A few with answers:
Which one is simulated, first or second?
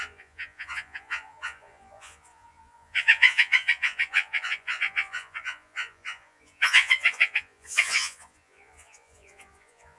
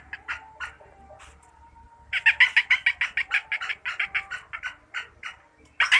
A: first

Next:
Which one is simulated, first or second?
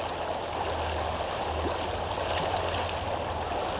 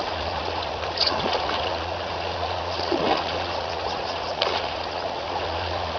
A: second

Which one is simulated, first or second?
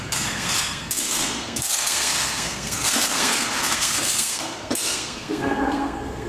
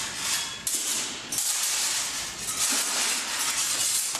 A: first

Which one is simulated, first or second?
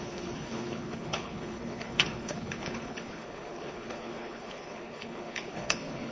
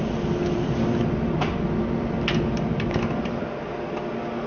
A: first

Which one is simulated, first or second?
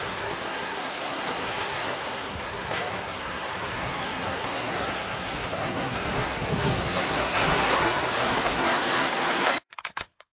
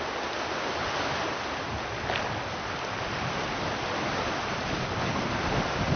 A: first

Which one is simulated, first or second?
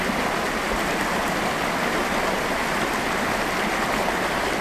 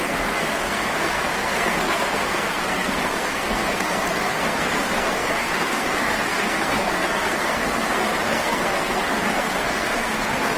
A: second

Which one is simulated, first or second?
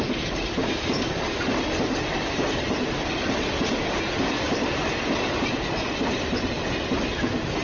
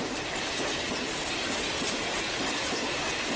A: second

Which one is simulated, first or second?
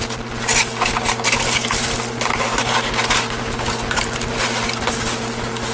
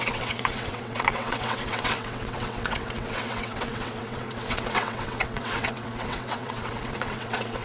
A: second